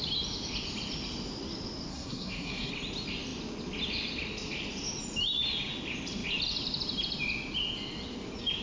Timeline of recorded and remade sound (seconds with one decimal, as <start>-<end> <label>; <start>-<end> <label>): 0.0-1.9 recorded; 1.9-2.7 remade; 2.7-8.6 recorded